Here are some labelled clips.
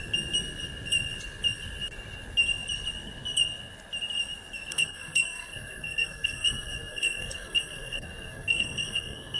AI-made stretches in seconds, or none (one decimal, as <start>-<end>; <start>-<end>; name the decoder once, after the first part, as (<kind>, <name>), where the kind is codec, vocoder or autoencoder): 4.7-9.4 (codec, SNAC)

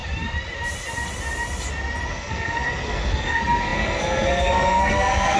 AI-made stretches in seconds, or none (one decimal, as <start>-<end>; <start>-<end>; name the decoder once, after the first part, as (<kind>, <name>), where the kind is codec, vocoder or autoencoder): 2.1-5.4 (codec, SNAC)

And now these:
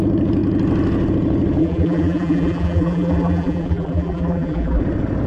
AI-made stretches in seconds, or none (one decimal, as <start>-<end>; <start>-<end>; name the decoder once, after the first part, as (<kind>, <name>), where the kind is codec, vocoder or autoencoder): 1.6-4.8 (vocoder, BigVGAN v2)

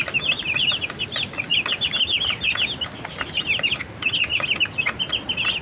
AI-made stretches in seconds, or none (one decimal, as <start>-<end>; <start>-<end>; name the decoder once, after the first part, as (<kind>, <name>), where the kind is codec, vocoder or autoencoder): none

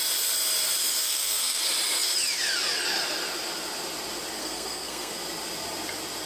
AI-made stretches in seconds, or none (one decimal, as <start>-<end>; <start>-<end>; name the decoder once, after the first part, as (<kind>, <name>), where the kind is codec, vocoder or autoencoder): 1.0-1.6 (codec, SNAC); 4.4-5.1

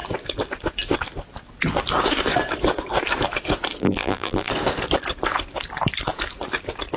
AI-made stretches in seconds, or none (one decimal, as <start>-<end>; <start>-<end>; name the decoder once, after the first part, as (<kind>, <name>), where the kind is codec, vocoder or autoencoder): 3.8-4.5 (vocoder, BigVGAN v2)